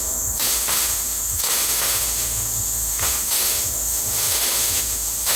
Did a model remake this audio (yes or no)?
yes